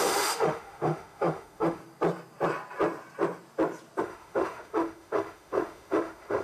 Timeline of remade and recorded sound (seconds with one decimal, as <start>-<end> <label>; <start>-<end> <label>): 0.0-1.8 remade; 1.8-4.0 recorded; 4.0-6.4 remade